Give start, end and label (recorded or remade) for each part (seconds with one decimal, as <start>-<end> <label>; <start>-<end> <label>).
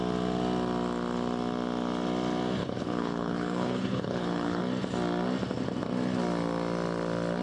0.0-2.6 recorded; 2.6-4.6 remade; 4.6-7.4 recorded